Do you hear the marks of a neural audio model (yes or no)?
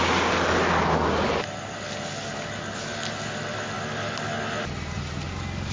no